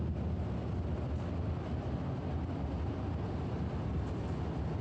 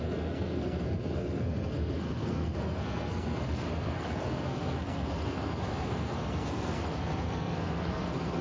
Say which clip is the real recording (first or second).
first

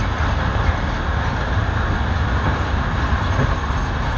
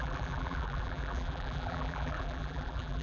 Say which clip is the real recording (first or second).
first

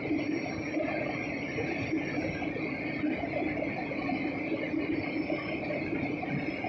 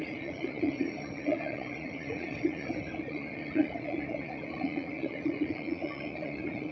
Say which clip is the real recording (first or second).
first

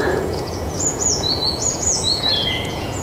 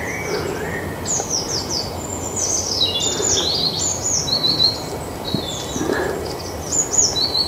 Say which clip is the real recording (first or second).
second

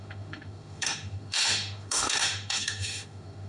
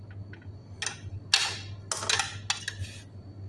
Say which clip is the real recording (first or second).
second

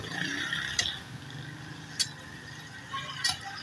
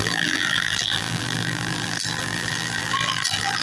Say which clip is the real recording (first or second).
first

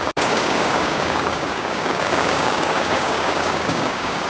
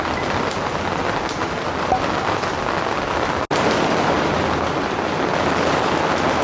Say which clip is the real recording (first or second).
second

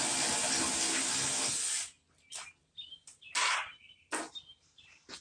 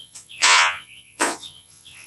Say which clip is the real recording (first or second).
first